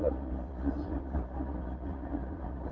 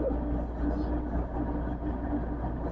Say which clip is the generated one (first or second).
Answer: first